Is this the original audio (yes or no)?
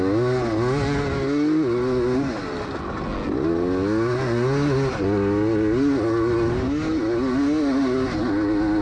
yes